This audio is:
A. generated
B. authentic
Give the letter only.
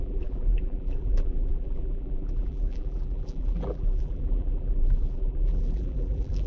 A